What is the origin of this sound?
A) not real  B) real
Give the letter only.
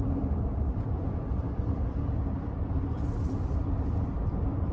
A